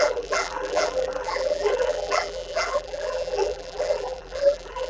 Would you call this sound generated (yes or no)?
yes